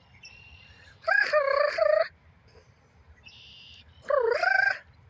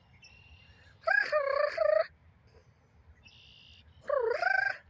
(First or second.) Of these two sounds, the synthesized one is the first